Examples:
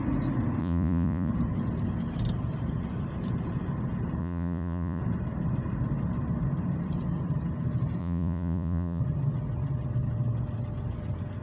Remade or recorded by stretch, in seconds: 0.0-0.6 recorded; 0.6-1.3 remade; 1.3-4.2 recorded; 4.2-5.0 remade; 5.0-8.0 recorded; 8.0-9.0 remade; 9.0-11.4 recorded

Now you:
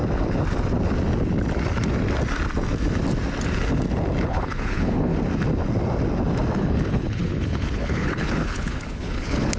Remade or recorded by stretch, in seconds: 0.0-4.2 recorded; 4.2-5.1 remade; 5.1-6.6 recorded; 6.6-9.6 remade

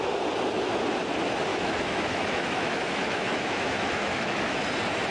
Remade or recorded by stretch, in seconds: 0.0-1.5 recorded; 1.5-4.6 remade; 4.6-5.1 recorded

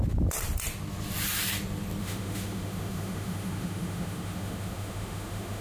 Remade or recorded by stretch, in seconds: 0.0-2.0 recorded; 2.0-5.6 remade

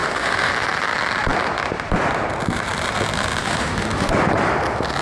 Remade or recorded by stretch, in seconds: 0.0-0.5 remade; 0.5-3.4 recorded; 3.4-4.1 remade; 4.1-5.0 recorded